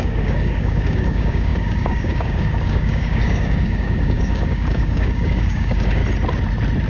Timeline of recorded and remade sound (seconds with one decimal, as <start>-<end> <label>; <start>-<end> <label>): 0.0-6.0 remade; 6.0-6.9 recorded